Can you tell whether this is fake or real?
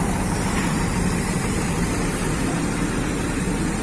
fake